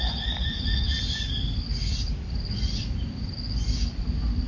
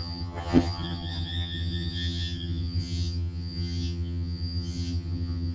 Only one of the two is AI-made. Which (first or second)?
second